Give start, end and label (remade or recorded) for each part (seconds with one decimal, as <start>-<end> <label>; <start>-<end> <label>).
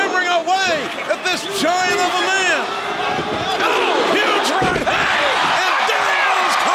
0.0-6.7 recorded